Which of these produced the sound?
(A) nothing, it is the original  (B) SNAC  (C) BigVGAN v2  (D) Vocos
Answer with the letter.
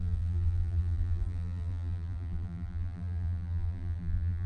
C